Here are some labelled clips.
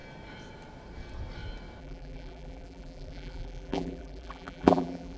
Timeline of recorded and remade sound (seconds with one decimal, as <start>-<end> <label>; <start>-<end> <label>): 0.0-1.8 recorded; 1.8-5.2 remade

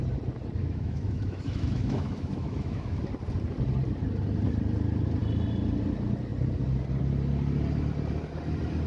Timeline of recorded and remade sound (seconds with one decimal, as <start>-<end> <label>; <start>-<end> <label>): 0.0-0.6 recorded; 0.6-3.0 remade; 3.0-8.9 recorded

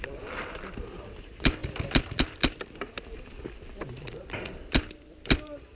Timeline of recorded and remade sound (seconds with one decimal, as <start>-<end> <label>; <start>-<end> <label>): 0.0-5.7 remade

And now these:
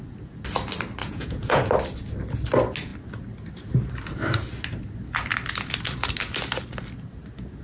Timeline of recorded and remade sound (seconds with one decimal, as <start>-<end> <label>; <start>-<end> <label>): 0.0-1.0 recorded; 1.0-1.7 remade; 1.7-7.6 recorded

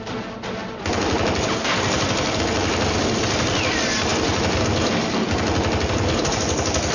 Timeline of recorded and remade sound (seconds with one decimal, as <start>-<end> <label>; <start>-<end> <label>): 0.0-6.9 recorded

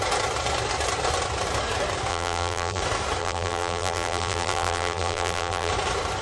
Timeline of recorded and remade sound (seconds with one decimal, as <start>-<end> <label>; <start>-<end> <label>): 0.0-2.1 recorded; 2.1-2.8 remade; 2.8-3.2 recorded; 3.2-5.7 remade; 5.7-6.2 recorded

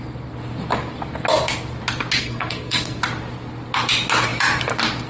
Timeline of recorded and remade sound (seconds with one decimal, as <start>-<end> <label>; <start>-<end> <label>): 0.0-2.2 recorded; 2.2-3.0 remade; 3.0-5.1 recorded